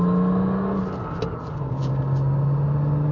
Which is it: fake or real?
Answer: real